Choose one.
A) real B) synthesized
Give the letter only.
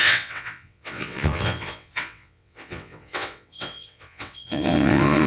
B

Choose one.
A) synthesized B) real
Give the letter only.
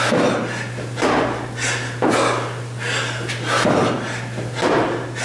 B